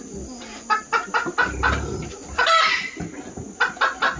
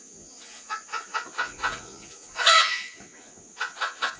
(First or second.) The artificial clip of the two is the second